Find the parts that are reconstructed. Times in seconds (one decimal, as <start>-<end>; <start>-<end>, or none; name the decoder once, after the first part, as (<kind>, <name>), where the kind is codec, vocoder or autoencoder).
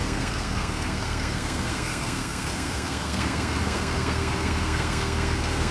0.0-5.7 (codec, SNAC)